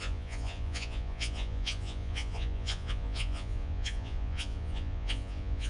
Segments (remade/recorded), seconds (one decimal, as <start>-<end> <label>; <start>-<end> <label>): 0.0-5.7 remade